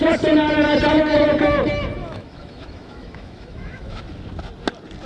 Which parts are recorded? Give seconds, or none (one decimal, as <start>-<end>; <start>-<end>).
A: 0.0-2.0; 4.0-5.1

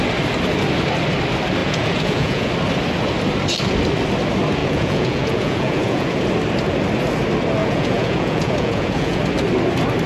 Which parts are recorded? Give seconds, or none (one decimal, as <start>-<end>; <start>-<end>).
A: 0.0-1.6; 2.5-4.6; 6.2-7.6; 9.2-10.1